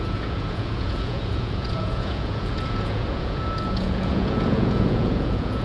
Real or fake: fake